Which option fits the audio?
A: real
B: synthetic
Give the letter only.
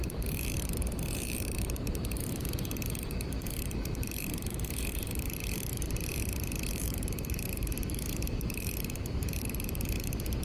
B